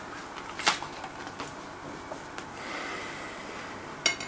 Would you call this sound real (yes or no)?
yes